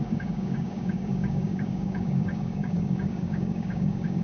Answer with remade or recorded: remade